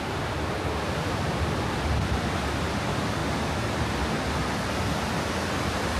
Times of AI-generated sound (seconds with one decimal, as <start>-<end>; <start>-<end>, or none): none